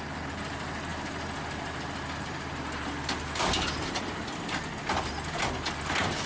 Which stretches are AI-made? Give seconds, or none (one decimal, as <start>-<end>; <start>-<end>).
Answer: none